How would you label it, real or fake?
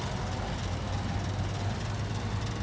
real